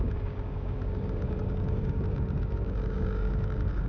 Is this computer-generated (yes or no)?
yes